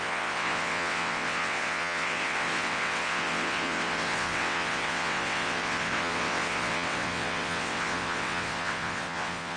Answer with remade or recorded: remade